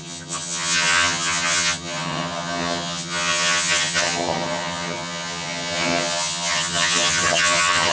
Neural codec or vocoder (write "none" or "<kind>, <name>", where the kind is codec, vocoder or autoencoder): vocoder, HiFi-GAN